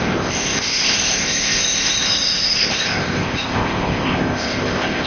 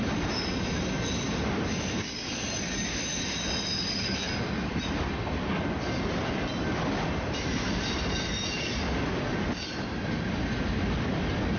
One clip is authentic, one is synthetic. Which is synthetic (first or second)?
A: first